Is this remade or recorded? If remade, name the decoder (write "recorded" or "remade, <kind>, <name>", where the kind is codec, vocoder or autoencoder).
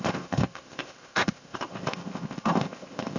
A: remade, codec, ZipCodec